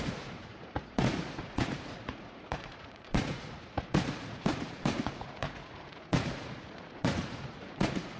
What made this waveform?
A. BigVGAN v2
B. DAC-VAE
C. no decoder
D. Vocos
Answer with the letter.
D